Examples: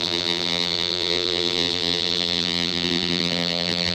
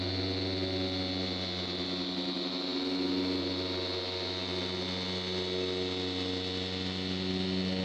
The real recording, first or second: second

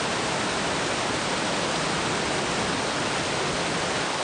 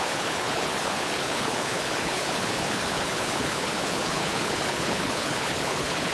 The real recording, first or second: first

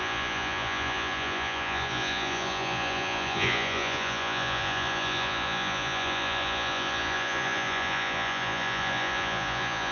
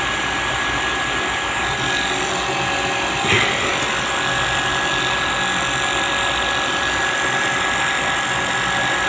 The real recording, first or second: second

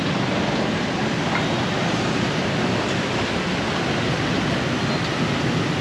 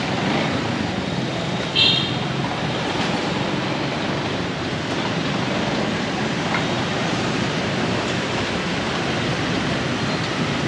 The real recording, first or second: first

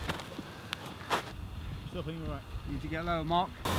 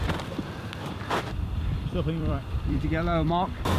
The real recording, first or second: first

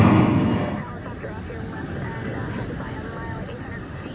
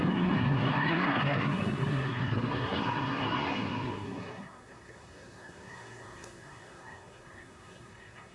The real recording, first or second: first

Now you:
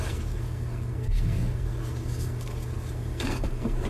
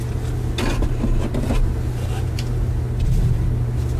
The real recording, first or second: second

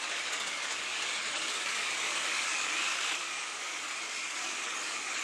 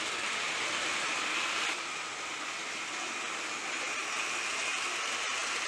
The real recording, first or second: second